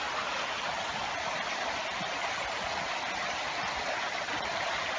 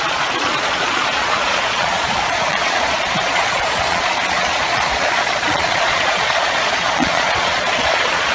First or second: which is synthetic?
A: second